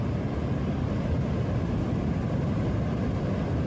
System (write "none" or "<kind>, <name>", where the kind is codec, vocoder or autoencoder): none